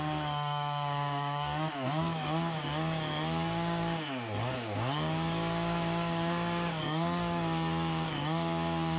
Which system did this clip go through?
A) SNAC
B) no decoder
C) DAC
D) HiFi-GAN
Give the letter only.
C